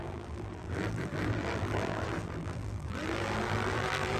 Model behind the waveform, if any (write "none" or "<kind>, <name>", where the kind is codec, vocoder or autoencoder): vocoder, BigVGAN v2